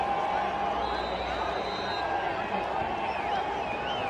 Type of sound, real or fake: real